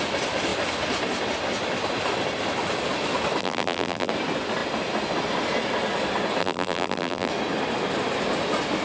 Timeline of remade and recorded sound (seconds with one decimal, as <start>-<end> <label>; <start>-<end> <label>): 0.0-3.4 recorded; 3.4-4.1 remade; 4.1-6.4 recorded; 6.4-7.3 remade; 7.3-8.8 recorded